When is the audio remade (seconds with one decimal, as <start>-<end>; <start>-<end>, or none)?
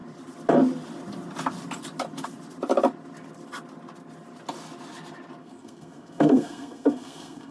5.4-7.5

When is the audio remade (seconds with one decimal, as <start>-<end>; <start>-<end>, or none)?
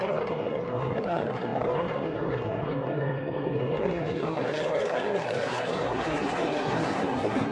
0.0-7.5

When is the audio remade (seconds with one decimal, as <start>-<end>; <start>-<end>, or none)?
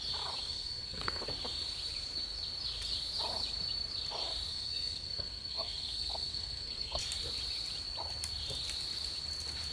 0.4-1.2; 4.5-7.0